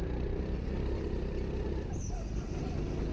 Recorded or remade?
remade